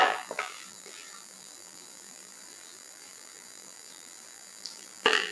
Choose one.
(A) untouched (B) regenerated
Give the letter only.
B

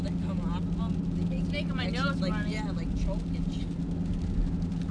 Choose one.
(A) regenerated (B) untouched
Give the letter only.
B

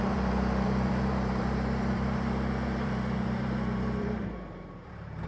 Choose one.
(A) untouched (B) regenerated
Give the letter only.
B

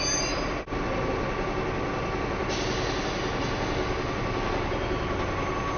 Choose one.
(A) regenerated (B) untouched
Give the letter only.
B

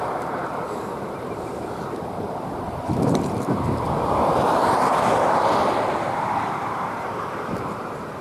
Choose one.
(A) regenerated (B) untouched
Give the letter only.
A